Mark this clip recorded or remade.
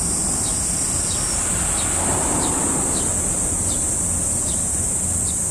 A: recorded